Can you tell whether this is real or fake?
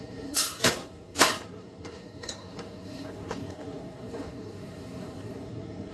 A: fake